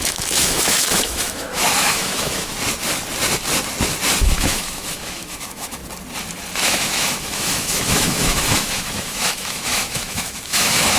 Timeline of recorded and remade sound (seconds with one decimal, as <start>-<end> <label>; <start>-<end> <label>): 0.0-2.5 remade; 2.5-4.2 recorded; 4.2-5.8 remade; 5.8-6.6 recorded; 6.6-11.0 remade